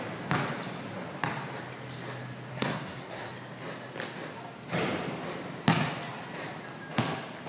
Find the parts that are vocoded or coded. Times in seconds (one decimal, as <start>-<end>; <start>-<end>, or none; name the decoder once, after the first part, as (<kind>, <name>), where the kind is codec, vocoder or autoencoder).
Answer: 2.5-3.3 (codec, SNAC)